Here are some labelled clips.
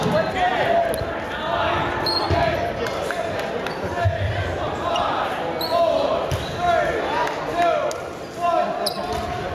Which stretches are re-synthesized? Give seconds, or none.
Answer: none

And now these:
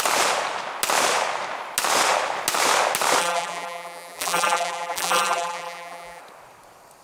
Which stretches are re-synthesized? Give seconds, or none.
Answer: 3.2-6.2

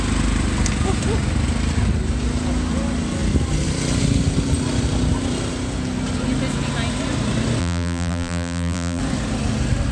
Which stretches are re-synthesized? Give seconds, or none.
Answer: 7.6-9.0

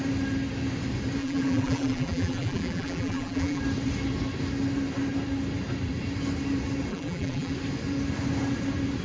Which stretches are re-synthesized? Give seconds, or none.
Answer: 1.2-3.6; 6.9-7.5

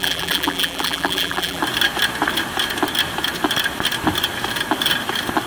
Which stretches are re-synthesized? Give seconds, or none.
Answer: 0.0-1.6

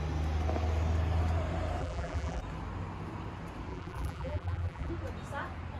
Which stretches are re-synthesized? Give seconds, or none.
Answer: 1.8-2.4; 3.7-4.9

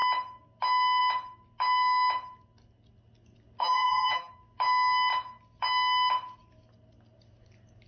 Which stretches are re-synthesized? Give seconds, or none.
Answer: 3.6-4.3

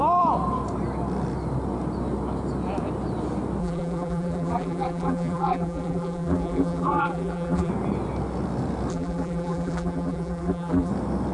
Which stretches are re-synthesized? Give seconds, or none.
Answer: 3.6-7.7; 8.9-10.9